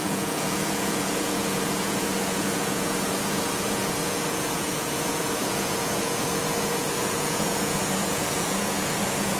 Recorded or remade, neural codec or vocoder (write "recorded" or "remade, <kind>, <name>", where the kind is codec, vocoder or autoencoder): remade, vocoder, Vocos